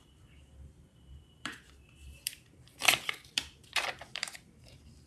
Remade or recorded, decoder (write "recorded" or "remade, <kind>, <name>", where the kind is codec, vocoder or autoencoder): remade, vocoder, BigVGAN v2